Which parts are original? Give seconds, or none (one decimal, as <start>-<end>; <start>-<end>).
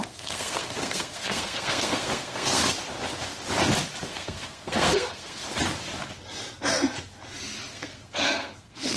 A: 2.6-4.1; 5.4-7.7